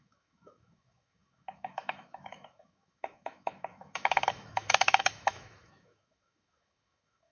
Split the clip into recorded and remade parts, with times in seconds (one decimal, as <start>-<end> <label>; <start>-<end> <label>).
0.0-7.3 remade